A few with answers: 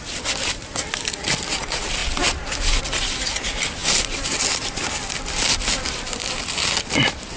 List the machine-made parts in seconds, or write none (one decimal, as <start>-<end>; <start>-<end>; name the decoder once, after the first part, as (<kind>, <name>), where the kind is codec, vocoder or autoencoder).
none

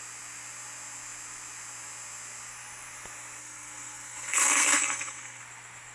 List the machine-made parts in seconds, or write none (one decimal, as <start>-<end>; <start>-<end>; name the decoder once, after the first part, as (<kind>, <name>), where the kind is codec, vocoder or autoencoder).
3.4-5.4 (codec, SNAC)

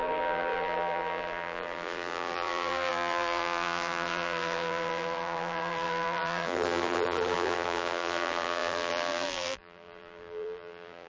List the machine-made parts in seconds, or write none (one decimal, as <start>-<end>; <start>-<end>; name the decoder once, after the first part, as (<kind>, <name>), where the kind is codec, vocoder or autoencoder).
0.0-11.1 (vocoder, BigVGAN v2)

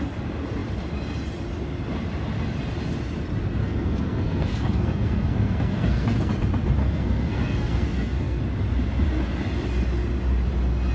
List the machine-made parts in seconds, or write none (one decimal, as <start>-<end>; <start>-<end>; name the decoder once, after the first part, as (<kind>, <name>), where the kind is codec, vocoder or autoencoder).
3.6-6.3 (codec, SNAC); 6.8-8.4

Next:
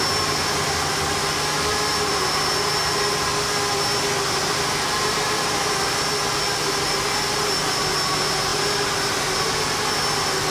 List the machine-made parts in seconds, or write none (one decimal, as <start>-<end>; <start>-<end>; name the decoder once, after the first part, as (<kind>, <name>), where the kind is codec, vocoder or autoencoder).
3.3-6.1 (vocoder, BigVGAN v2); 8.5-9.7

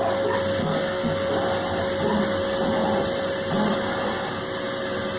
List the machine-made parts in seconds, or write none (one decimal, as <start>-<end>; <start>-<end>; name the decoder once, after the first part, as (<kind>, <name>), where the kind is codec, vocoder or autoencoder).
0.6-1.3 (codec, SNAC)